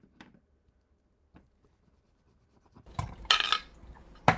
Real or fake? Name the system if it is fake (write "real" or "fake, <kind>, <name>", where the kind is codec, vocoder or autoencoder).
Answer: fake, vocoder, BigVGAN v2